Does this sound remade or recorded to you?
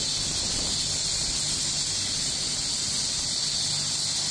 recorded